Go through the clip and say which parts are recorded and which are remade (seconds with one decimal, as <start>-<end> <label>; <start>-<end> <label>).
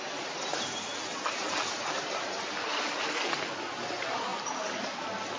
0.0-5.4 recorded